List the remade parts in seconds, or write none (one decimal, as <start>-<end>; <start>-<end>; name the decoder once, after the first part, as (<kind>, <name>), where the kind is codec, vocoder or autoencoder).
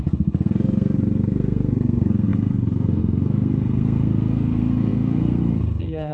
0.0-6.1 (codec, SNAC)